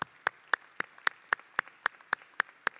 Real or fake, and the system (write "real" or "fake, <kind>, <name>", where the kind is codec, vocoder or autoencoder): real